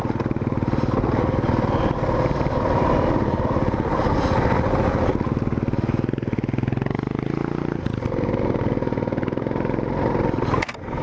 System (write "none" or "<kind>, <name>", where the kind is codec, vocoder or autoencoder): none